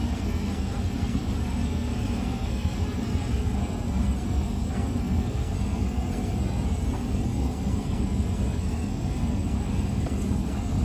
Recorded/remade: remade